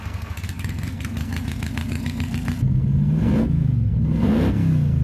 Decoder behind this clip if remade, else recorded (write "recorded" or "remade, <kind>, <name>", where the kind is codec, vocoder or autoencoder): remade, codec, SNAC